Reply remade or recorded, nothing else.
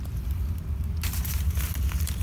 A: recorded